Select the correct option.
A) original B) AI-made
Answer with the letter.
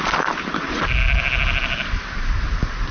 A